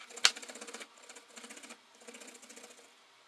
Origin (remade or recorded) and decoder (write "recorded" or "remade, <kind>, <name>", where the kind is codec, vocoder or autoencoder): recorded